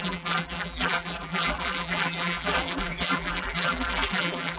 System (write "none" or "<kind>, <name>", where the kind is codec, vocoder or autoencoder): vocoder, BigVGAN v2